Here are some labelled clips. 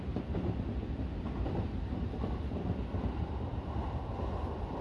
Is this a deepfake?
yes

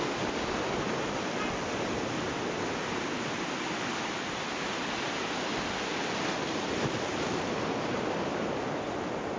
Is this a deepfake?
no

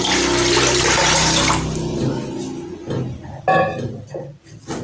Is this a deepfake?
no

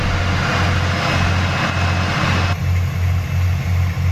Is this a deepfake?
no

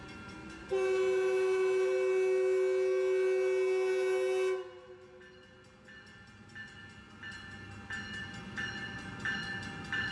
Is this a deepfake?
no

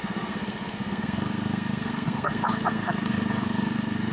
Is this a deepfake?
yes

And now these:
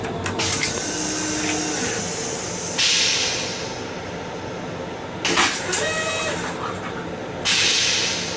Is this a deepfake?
no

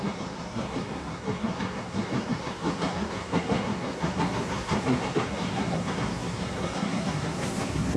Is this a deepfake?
yes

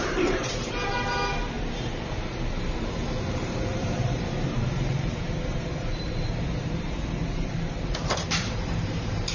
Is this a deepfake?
yes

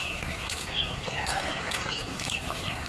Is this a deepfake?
yes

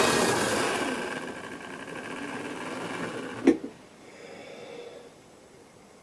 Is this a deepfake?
no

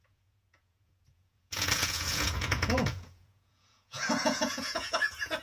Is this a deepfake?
yes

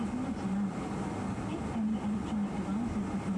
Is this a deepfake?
no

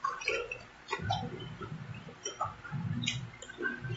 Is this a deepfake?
yes